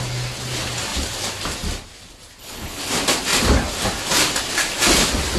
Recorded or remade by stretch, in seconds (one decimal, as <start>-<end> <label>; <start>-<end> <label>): 0.0-2.4 recorded; 2.4-2.9 remade; 2.9-5.4 recorded